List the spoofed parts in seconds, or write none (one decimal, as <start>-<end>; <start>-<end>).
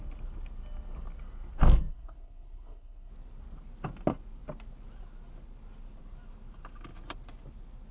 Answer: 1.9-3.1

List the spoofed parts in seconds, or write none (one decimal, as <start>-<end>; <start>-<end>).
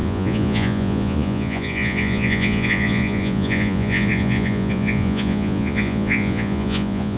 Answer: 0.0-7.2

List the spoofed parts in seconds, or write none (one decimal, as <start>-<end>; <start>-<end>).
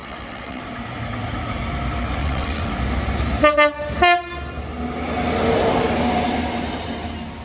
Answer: 0.0-0.6; 2.2-2.7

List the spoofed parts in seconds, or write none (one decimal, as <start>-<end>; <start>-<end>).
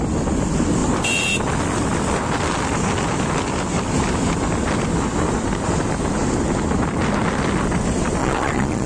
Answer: 8.2-8.9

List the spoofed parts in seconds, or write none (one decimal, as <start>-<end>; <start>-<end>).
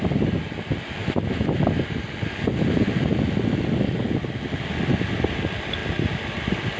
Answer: 5.8-6.8